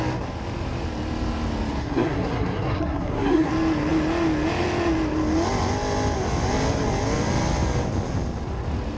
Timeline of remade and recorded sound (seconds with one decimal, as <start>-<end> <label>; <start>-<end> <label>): 0.0-1.8 recorded; 1.8-3.5 remade; 3.5-9.0 recorded